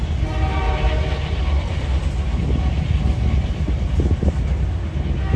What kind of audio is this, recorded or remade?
recorded